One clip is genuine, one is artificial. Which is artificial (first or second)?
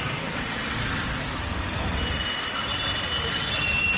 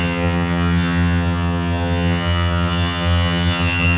second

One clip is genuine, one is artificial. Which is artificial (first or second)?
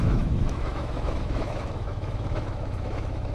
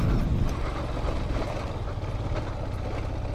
first